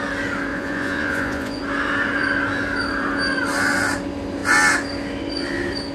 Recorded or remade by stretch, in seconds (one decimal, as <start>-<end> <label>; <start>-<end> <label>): 0.0-0.5 recorded; 0.5-1.6 remade; 1.6-5.9 recorded